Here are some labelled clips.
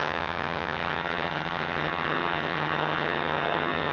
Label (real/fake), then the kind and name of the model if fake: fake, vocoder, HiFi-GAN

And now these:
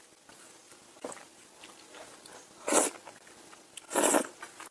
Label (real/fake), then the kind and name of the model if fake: real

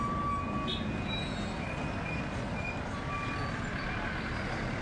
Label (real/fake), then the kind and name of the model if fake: real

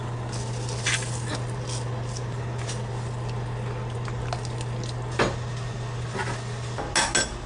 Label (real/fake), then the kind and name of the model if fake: real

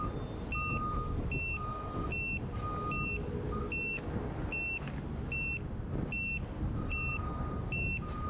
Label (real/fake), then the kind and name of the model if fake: real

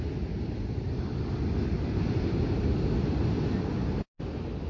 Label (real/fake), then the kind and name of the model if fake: real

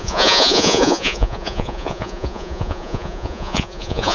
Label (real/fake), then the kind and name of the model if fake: fake, vocoder, Vocos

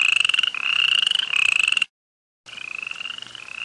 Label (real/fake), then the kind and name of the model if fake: real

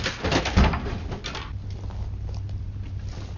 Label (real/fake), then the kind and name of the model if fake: real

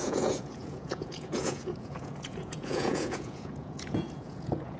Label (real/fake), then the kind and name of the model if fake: fake, vocoder, Vocos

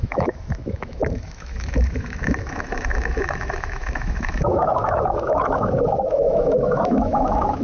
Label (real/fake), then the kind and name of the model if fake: fake, autoencoder, DAC-VAE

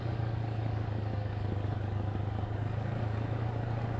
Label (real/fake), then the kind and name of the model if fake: fake, codec, DAC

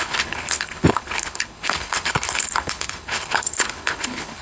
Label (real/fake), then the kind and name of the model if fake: fake, codec, HILCodec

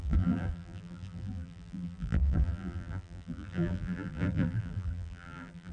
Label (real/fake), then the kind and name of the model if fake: fake, vocoder, BigVGAN v2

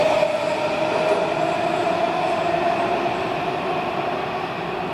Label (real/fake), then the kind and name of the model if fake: real